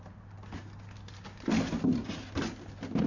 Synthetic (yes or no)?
no